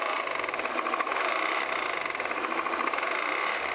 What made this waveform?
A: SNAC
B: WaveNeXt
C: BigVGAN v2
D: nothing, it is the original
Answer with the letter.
C